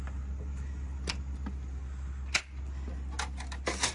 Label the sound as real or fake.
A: real